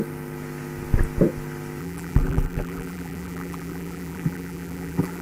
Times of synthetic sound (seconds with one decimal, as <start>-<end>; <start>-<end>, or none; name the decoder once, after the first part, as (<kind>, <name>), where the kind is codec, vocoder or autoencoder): 1.8-5.2 (vocoder, BigVGAN v2)